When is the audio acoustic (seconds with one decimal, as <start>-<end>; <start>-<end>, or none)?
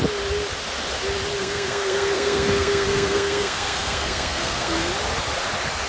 0.0-1.4; 4.9-5.9